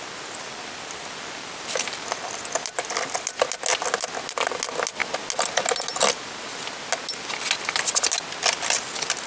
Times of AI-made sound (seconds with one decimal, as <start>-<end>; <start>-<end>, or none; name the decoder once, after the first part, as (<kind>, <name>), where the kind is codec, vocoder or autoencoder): none